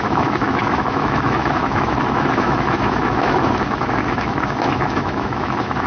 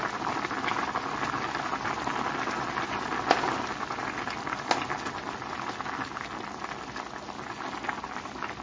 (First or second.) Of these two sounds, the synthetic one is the first